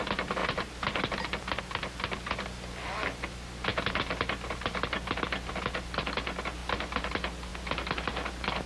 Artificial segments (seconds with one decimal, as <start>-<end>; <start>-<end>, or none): none